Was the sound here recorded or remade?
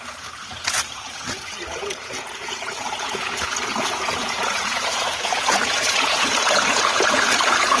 remade